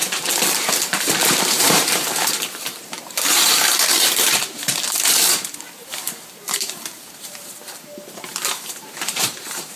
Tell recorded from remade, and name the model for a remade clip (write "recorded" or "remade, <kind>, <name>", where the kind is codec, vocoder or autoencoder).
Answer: remade, vocoder, BigVGAN v2